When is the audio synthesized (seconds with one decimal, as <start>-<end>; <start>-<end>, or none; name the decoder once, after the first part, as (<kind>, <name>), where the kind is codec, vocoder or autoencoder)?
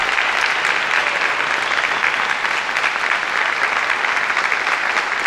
none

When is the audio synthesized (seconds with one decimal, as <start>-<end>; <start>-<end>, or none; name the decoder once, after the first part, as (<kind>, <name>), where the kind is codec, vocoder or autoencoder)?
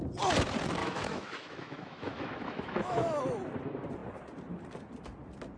0.8-3.2 (autoencoder, DAC-VAE)